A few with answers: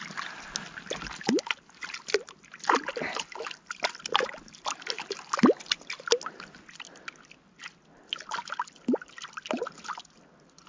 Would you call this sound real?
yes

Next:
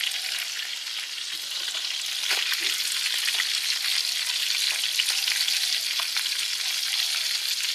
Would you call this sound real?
yes